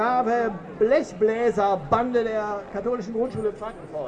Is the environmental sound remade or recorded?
recorded